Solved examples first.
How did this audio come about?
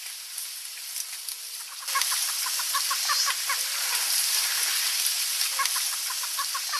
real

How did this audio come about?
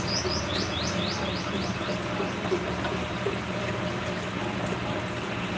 real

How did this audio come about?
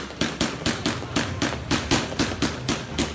real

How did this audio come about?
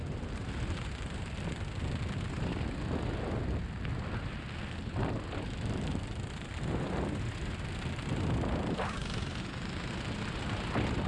real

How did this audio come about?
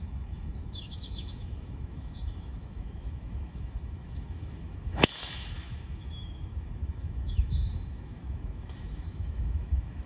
fake